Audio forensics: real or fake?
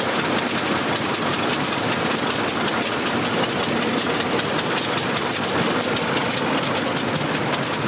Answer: real